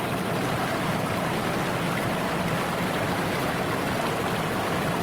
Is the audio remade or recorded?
recorded